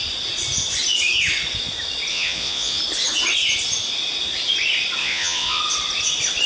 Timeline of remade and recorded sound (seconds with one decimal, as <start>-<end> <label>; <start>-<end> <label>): 0.0-2.1 recorded; 2.1-2.8 remade; 2.8-5.0 recorded; 5.0-5.6 remade; 5.6-6.5 recorded